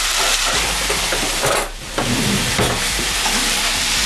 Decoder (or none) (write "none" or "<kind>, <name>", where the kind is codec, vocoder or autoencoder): vocoder, BigVGAN v2